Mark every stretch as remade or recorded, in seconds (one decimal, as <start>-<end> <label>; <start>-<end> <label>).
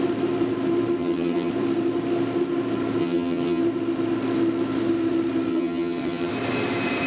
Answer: 0.0-1.0 recorded; 1.0-1.5 remade; 1.5-3.0 recorded; 3.0-3.6 remade; 3.6-5.5 recorded; 5.5-6.3 remade; 6.3-7.1 recorded